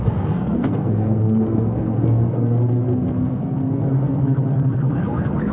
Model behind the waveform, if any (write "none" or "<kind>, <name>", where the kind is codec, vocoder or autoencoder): codec, SNAC